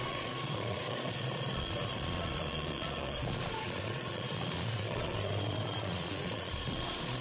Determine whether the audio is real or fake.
fake